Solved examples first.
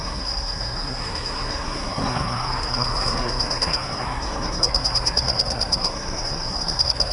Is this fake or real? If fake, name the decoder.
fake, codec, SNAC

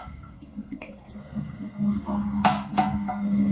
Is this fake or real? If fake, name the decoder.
fake, codec, SNAC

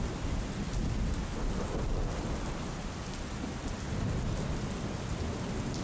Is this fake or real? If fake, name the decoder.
real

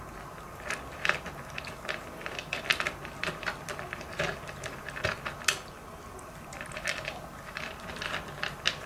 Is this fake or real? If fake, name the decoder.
real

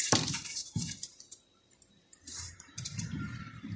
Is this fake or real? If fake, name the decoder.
fake, vocoder, BigVGAN v2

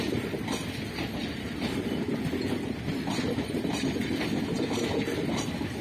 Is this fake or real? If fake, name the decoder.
real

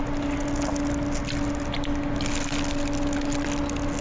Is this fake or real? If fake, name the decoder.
real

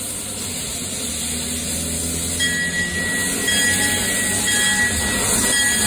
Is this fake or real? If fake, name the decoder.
real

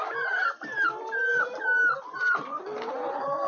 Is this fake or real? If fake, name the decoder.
real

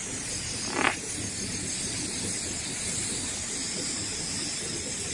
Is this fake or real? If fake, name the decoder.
real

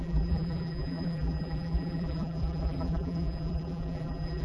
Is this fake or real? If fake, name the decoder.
fake, vocoder, BigVGAN v2